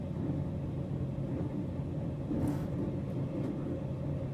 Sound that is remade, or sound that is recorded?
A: recorded